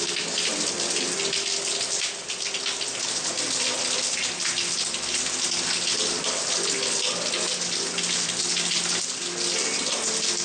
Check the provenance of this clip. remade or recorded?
recorded